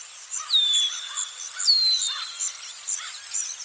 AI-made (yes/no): no